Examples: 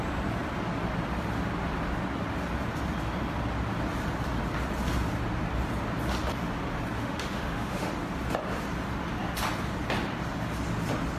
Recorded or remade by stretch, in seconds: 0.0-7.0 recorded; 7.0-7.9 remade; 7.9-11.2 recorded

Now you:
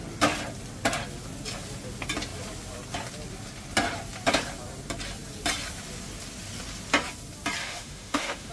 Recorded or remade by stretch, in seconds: 0.0-7.6 recorded; 7.6-8.5 remade

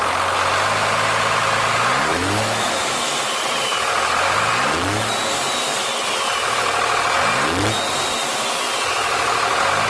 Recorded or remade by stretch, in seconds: 0.0-2.1 recorded; 2.1-3.1 remade; 3.1-9.9 recorded

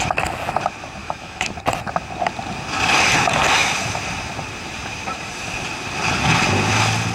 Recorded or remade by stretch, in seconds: 0.0-1.0 recorded; 1.0-1.5 remade; 1.5-7.1 recorded

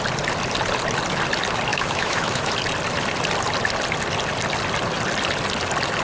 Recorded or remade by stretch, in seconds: 0.0-1.7 recorded; 1.7-2.5 remade; 2.5-6.0 recorded